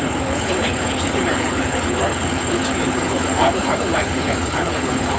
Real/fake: fake